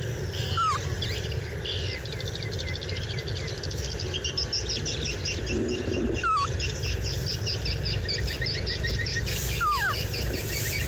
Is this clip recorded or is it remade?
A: recorded